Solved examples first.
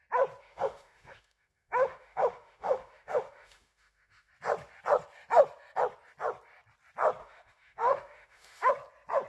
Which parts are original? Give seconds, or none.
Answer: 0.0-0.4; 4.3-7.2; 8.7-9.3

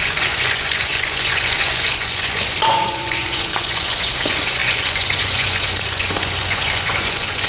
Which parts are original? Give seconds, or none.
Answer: none

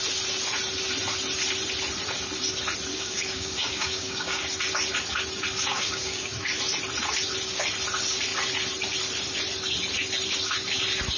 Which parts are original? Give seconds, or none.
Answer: 0.0-2.9; 4.4-5.7; 6.3-11.2

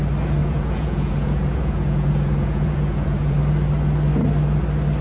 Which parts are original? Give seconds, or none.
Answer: 0.0-0.4; 3.4-5.0

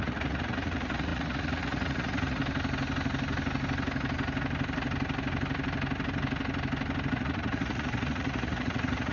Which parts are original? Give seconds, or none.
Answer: 2.4-7.1

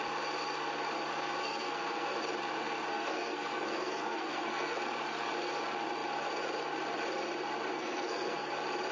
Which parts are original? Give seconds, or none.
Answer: 0.0-1.4; 2.2-2.9; 4.8-7.7; 8.5-8.9